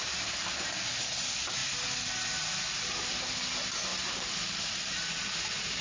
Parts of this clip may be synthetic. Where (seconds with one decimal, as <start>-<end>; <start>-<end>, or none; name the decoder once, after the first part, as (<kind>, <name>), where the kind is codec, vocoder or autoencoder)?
none